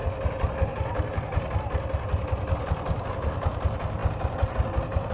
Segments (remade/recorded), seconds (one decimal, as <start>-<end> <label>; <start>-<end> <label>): 0.0-3.1 recorded; 3.1-5.1 remade